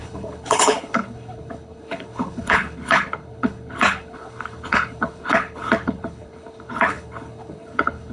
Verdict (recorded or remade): remade